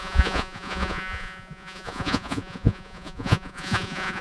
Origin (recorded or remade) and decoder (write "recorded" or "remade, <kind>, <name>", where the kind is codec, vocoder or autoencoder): remade, vocoder, Vocos